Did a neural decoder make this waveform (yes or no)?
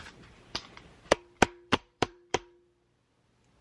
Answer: yes